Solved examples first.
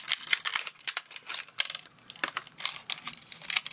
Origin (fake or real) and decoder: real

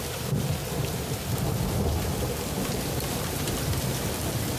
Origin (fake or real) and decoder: real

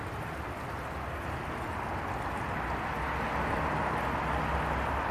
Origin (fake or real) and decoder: real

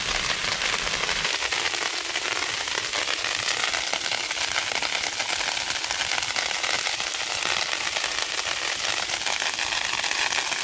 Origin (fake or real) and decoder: real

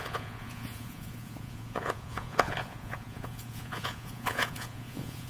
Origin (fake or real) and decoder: fake, vocoder, Vocos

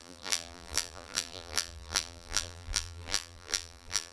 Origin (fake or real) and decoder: fake, vocoder, BigVGAN v2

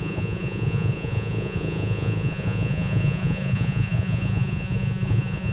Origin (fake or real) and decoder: fake, vocoder, Vocos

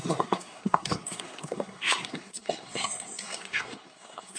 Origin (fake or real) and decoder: fake, codec, SNAC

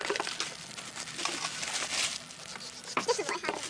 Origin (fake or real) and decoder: real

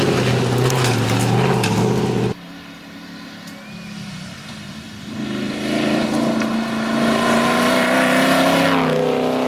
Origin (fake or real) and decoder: real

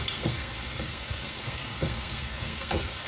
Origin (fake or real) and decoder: fake, codec, SNAC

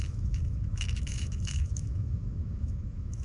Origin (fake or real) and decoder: fake, autoencoder, DAC-VAE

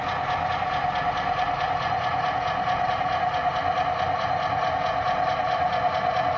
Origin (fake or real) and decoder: real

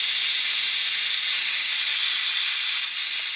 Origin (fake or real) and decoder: real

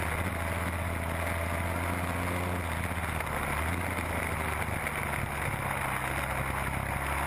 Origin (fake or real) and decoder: real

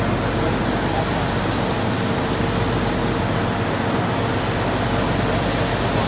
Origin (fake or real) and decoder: real